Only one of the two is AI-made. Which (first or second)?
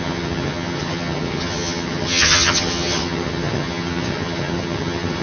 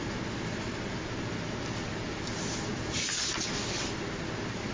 first